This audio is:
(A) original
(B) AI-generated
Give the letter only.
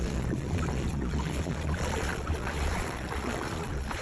B